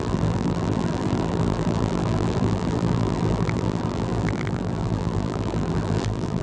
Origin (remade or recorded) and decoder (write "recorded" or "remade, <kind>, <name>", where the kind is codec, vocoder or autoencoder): remade, vocoder, BigVGAN v2